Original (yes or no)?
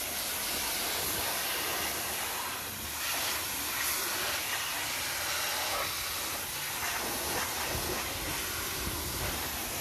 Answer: yes